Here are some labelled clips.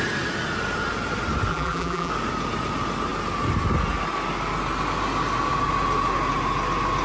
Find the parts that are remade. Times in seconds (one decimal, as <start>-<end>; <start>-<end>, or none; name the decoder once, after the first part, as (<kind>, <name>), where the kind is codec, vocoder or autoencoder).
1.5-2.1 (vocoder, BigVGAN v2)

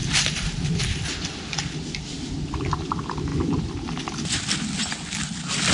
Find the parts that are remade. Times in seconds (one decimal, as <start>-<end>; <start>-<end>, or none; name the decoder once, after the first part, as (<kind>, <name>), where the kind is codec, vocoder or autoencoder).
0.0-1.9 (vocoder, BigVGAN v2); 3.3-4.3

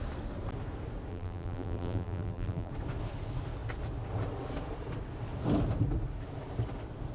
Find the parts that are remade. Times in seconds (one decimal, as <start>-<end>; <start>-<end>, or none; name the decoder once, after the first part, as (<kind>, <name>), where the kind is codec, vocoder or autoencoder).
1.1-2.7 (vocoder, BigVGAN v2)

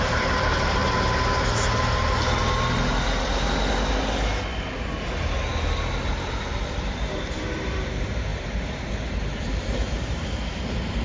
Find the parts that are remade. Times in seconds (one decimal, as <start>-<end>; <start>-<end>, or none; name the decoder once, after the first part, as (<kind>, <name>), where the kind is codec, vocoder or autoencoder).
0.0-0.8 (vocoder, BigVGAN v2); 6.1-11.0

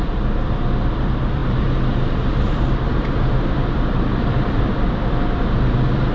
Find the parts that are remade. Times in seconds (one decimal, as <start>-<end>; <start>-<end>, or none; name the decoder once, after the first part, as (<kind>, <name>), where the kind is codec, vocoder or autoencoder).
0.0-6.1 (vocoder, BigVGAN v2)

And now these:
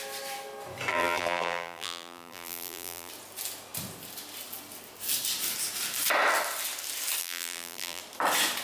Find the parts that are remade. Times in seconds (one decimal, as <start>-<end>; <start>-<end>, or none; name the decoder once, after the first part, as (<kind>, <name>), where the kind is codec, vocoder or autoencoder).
0.9-3.1 (vocoder, BigVGAN v2); 7.2-8.0